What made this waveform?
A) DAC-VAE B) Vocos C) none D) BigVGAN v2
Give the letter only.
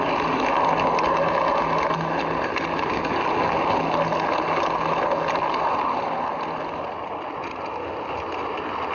C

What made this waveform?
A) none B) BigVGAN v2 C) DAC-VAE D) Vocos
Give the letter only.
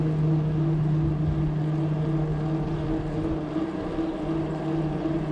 A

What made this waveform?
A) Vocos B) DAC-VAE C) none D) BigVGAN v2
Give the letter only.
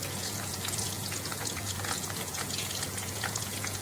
A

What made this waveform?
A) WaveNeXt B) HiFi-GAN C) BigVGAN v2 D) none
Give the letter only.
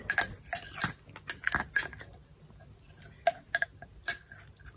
D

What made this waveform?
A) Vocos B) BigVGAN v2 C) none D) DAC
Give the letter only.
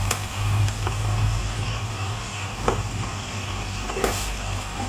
D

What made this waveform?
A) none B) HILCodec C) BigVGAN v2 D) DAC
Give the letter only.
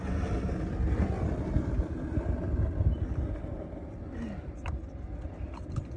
A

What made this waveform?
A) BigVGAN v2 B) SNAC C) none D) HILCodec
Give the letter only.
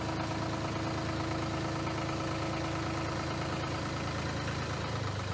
C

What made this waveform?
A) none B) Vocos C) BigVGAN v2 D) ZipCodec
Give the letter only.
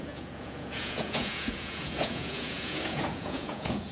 B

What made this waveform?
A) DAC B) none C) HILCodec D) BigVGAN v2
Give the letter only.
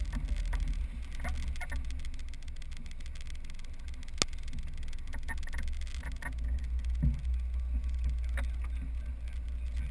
B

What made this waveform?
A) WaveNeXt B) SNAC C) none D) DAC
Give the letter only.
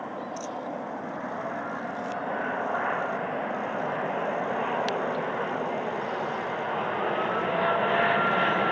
C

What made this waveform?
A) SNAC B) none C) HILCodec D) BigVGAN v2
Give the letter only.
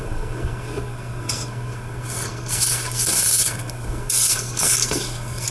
A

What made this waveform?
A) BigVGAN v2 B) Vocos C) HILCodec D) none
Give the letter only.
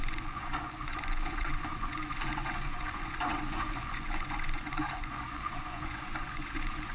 B